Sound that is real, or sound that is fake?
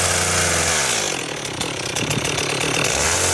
real